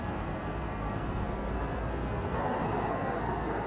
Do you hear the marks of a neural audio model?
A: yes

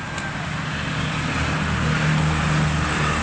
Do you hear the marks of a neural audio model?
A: no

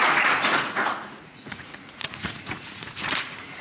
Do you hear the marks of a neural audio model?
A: yes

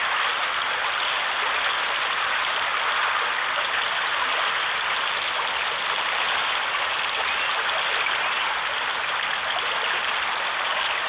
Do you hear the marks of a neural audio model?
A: no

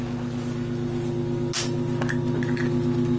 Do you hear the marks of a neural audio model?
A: no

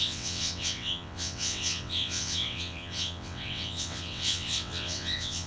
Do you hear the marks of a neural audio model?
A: yes